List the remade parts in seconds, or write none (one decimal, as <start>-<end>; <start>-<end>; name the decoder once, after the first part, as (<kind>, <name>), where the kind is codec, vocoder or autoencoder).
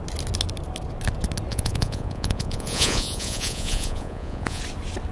1.5-4.6 (vocoder, Vocos)